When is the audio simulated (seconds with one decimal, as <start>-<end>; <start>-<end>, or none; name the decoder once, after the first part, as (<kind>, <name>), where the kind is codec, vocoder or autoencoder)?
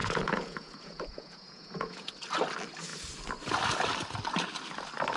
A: 0.0-2.1 (vocoder, Vocos)